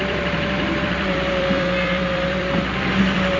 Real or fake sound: fake